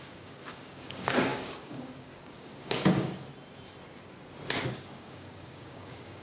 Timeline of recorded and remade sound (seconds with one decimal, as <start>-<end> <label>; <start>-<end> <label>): 0.0-3.3 remade; 3.3-4.7 recorded; 4.7-6.2 remade